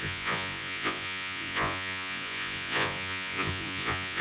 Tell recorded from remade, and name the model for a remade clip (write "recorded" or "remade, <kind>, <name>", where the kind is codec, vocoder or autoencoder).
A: remade, vocoder, Vocos